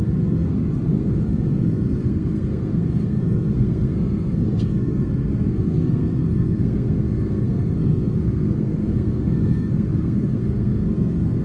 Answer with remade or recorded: remade